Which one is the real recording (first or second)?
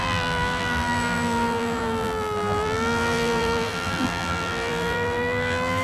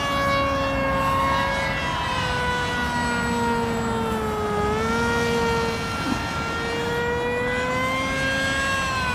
second